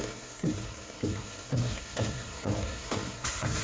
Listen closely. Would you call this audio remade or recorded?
remade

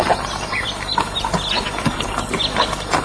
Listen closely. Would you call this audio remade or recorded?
recorded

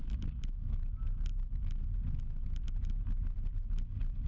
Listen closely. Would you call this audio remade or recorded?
recorded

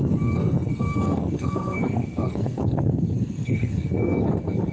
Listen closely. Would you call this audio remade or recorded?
remade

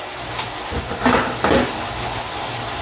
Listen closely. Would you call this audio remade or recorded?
recorded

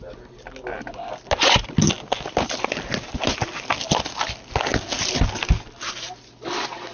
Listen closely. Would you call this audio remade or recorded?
recorded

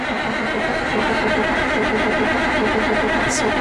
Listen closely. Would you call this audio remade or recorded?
recorded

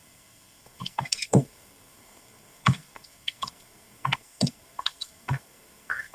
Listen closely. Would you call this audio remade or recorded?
remade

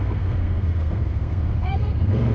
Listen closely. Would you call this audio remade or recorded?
remade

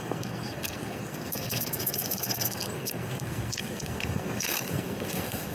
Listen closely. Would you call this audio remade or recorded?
remade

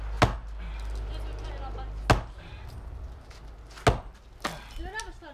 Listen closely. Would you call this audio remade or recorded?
recorded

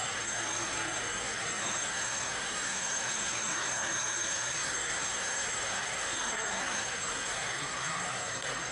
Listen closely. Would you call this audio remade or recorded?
remade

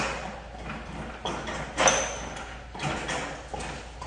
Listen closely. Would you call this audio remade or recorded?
recorded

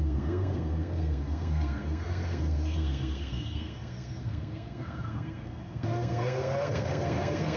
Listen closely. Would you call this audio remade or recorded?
remade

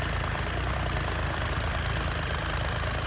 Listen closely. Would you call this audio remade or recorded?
recorded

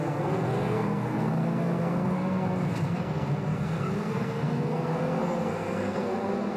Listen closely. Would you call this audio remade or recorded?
remade